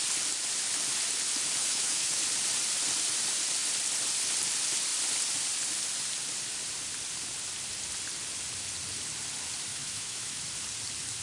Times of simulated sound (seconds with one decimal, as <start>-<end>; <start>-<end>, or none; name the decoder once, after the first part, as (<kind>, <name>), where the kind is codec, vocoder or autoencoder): 1.6-2.2 (autoencoder, DAC-VAE); 9.7-10.4